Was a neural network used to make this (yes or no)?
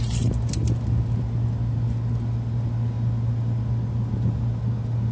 no